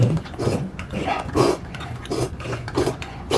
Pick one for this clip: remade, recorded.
remade